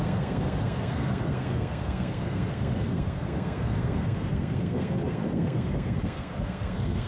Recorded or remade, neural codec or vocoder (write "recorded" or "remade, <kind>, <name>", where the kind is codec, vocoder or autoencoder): remade, codec, SNAC